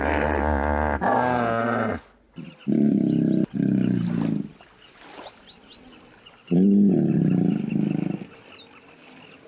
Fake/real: real